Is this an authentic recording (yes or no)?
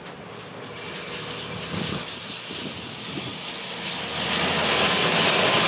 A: yes